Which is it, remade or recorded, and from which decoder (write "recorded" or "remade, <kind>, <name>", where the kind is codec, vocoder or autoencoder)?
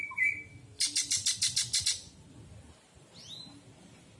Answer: recorded